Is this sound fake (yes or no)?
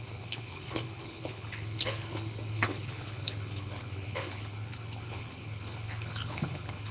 yes